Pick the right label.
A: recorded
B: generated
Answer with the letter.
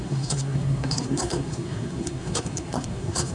B